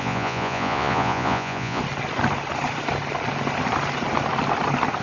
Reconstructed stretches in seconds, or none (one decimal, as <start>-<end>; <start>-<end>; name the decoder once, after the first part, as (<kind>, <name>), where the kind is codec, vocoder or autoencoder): 0.0-1.8 (vocoder, Vocos)